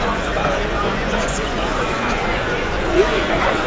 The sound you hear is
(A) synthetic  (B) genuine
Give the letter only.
A